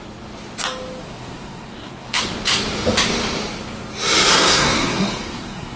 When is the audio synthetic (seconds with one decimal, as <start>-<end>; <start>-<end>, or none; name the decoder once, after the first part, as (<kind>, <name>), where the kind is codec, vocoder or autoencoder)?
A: 1.0-2.2 (codec, SNAC); 4.3-5.8